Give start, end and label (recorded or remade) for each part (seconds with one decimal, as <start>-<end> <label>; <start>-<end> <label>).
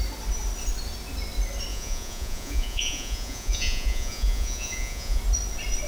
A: 0.0-1.7 recorded; 1.7-5.2 remade; 5.2-5.9 recorded